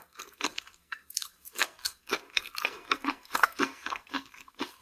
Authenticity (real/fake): fake